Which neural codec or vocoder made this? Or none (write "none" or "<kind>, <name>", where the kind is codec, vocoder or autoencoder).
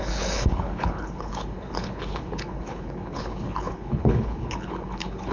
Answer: codec, HILCodec